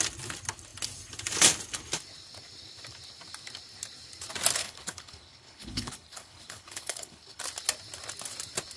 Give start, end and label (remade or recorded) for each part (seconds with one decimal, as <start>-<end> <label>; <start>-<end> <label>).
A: 0.0-4.6 recorded; 4.6-7.4 remade; 7.4-8.8 recorded